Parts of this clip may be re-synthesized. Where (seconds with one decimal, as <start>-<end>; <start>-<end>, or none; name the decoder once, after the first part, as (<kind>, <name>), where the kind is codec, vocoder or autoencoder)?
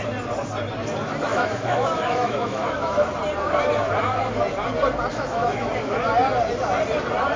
1.3-3.1 (autoencoder, DAC-VAE); 5.1-5.7